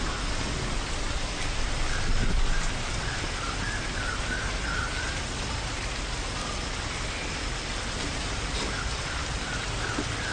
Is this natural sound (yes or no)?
yes